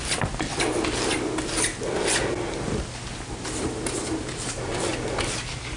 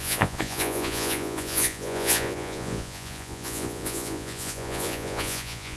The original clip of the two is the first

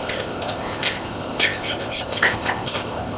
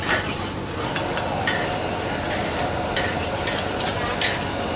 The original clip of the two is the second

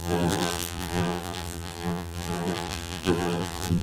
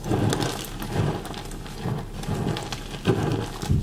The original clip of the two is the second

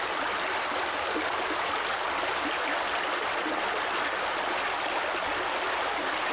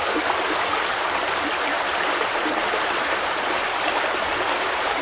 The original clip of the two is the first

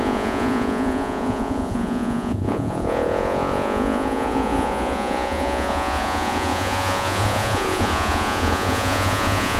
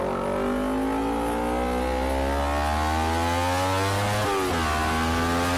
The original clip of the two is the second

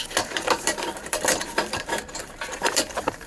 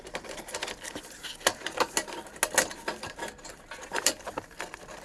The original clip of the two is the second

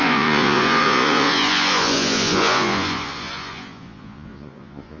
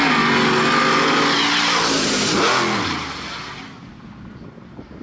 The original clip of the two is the second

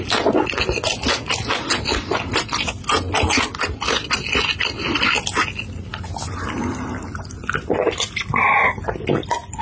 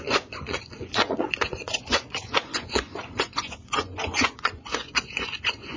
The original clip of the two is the first